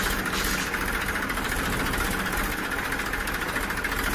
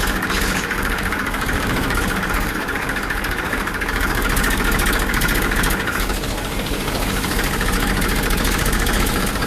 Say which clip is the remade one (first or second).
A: second